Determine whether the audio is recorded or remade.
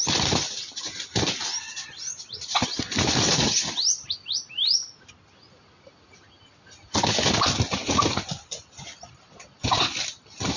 recorded